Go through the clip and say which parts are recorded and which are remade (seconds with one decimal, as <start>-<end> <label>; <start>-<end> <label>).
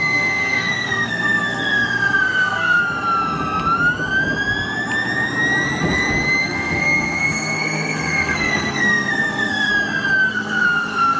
0.0-2.8 remade; 2.8-6.4 recorded; 6.4-9.7 remade; 9.7-10.3 recorded; 10.3-11.2 remade